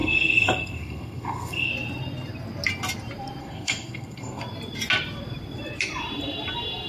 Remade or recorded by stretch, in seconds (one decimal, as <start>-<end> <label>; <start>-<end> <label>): 0.0-1.7 remade; 1.7-3.4 recorded; 3.4-4.4 remade; 4.4-6.9 recorded